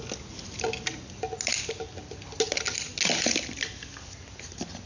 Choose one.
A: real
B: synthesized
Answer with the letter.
A